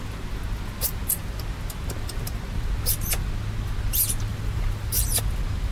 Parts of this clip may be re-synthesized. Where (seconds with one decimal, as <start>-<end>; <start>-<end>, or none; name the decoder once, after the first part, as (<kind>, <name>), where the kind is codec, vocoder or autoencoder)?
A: 4.3-5.2 (vocoder, BigVGAN v2)